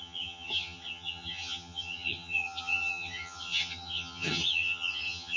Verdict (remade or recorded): remade